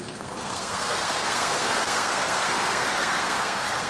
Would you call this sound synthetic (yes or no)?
yes